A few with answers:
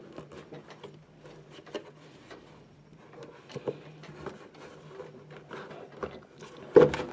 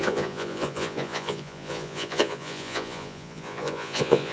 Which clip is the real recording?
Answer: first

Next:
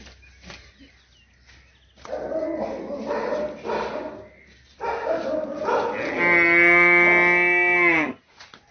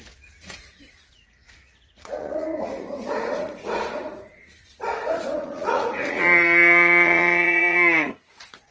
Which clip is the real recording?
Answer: first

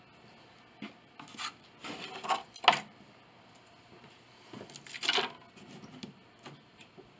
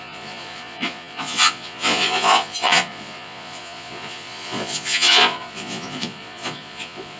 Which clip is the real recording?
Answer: first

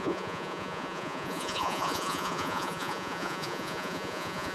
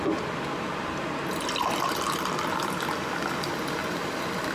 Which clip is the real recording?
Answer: second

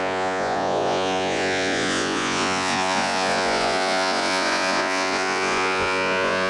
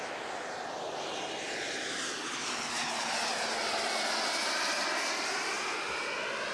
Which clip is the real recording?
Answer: second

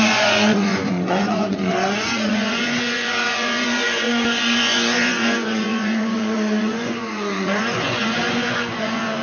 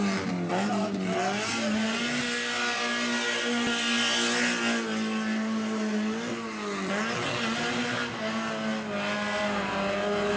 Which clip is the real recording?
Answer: second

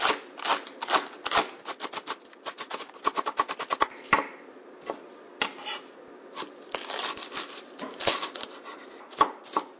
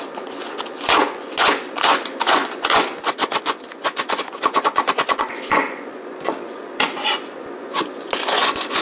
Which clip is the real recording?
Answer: first